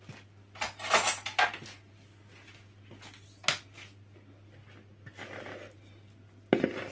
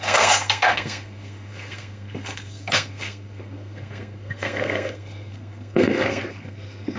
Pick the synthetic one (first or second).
second